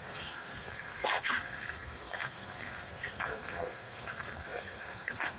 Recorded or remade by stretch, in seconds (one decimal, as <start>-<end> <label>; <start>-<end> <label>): 0.0-5.4 remade